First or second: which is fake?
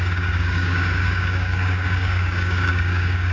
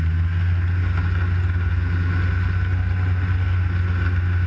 first